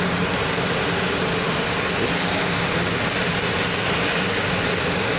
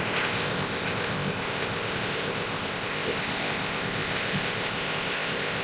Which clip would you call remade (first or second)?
second